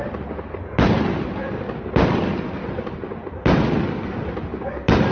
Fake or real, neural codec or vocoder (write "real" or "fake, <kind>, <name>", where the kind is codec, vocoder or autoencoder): real